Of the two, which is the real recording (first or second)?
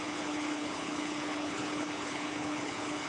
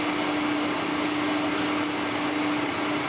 second